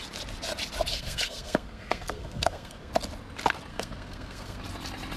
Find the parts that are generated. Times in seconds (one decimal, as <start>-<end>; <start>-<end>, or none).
0.9-2.9; 3.7-4.6